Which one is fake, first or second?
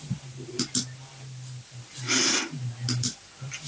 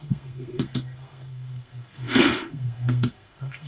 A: second